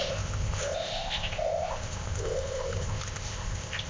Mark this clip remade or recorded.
remade